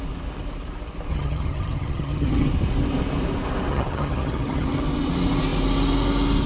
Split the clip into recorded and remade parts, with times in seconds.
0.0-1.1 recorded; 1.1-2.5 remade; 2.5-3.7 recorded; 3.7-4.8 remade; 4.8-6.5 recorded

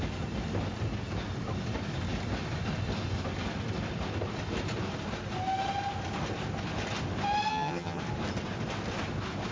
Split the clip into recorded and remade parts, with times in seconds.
0.0-7.5 recorded; 7.5-8.0 remade; 8.0-9.5 recorded